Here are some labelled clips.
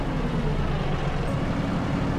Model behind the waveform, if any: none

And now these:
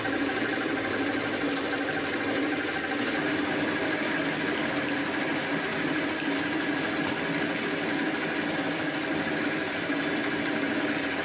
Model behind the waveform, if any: none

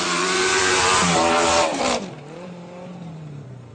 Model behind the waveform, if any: vocoder, BigVGAN v2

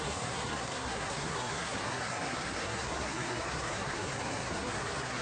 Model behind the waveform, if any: codec, SNAC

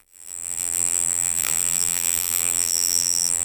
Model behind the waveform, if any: vocoder, BigVGAN v2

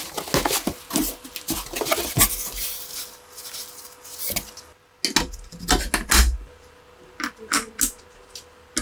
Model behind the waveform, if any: none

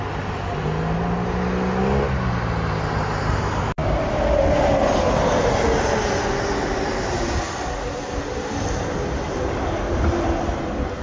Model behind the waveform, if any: none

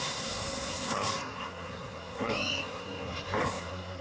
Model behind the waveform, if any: codec, SNAC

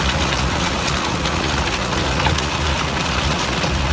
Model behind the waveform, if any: vocoder, Vocos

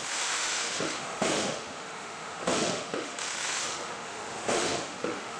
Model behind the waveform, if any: autoencoder, DAC-VAE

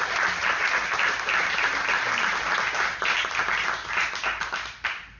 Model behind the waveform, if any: none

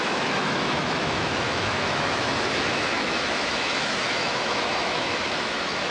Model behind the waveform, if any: autoencoder, DAC-VAE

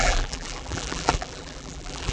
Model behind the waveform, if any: vocoder, BigVGAN v2